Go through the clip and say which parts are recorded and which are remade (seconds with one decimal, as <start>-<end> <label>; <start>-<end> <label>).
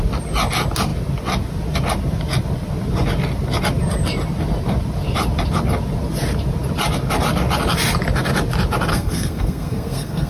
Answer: 0.0-8.9 recorded; 8.9-10.3 remade